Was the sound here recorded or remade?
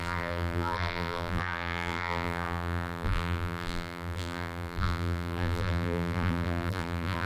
remade